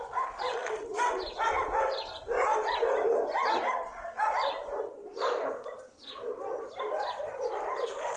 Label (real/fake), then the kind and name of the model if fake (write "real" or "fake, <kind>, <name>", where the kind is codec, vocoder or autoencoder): real